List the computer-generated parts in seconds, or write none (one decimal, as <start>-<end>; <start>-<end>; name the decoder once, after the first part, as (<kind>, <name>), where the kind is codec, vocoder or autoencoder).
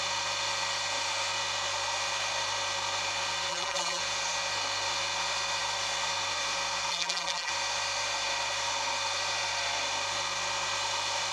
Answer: 3.5-4.0 (vocoder, BigVGAN v2); 6.9-7.5